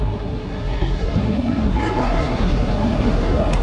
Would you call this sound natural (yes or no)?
no